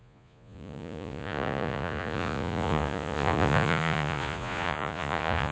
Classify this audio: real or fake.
fake